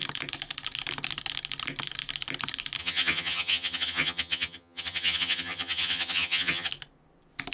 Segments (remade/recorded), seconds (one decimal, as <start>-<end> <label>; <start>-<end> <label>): 0.0-2.8 recorded; 2.8-6.7 remade; 6.7-7.5 recorded